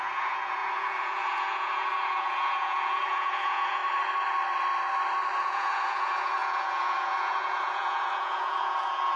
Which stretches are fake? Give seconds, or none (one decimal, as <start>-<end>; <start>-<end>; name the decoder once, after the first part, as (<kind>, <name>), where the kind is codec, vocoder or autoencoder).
0.0-3.8 (vocoder, Vocos); 5.4-9.2